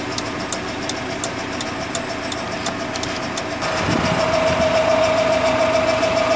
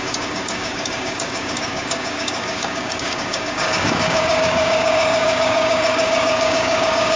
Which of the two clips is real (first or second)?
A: first